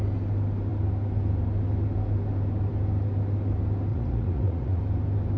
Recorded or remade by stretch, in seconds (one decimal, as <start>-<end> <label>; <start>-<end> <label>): 0.0-3.9 recorded; 3.9-4.8 remade; 4.8-5.4 recorded